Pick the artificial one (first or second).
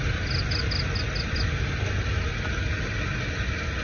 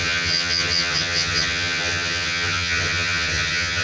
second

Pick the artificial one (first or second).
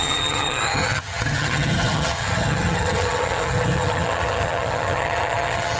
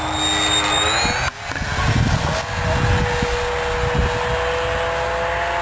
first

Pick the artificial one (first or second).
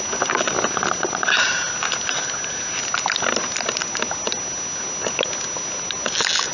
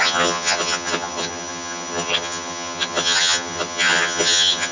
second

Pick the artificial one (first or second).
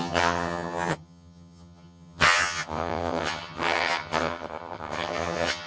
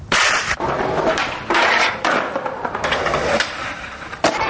first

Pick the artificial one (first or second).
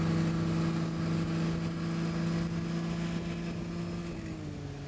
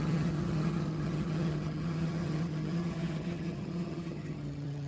second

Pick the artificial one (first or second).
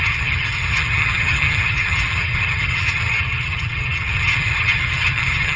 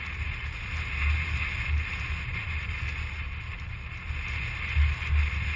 first